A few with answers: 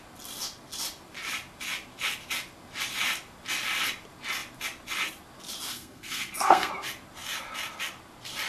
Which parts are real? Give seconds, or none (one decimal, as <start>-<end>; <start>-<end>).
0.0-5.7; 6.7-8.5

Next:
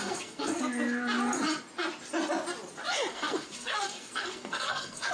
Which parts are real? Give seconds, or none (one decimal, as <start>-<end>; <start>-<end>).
0.6-3.1

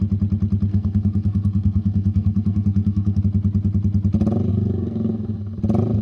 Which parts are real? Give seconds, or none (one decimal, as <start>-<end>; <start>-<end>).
0.0-0.7; 3.2-4.5; 5.6-6.0

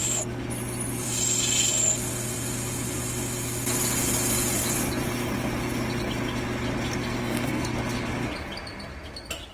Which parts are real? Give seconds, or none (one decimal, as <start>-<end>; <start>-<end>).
0.0-7.0; 7.6-9.5

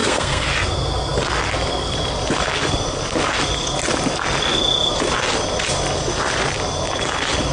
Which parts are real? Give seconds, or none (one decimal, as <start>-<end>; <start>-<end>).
0.5-7.5